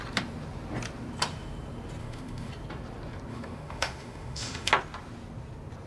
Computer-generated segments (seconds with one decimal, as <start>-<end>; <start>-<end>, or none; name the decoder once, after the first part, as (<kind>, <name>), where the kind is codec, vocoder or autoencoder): 2.0-2.5 (autoencoder, DAC-VAE); 3.3-4.7